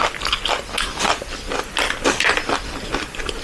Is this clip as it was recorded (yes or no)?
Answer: yes